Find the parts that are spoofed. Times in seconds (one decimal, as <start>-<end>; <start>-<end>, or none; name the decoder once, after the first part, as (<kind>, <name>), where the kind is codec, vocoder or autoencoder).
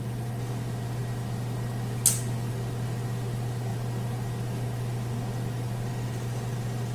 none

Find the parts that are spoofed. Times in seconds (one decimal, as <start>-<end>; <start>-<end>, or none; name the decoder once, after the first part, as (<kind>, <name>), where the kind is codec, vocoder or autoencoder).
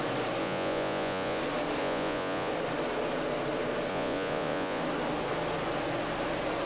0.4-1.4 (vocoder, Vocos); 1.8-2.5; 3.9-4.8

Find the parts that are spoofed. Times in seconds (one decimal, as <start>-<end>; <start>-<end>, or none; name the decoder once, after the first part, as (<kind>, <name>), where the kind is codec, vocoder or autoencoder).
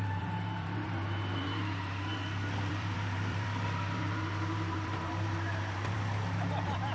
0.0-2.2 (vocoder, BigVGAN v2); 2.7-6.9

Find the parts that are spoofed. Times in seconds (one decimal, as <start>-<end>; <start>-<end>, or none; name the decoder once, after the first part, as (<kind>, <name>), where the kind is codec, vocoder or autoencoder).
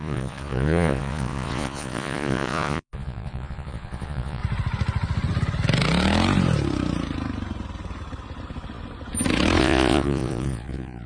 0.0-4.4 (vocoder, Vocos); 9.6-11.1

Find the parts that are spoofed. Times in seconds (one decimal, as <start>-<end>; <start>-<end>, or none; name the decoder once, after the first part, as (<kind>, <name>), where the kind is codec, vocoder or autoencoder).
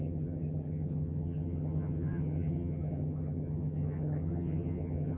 0.0-5.2 (vocoder, HiFi-GAN)